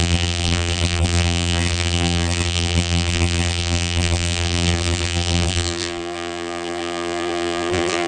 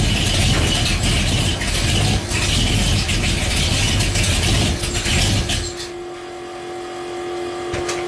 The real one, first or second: second